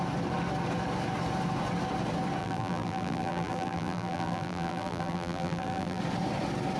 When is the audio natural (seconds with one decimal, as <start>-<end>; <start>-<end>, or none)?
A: 0.0-2.4; 6.0-6.8